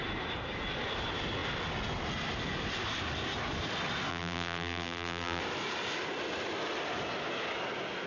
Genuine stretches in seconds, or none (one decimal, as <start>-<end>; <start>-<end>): 0.0-4.1; 5.4-8.1